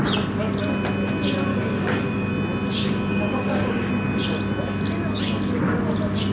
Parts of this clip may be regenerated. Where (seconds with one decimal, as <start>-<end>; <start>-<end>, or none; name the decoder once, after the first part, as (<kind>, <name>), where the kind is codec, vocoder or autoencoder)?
1.5-2.3 (codec, DAC); 2.8-3.9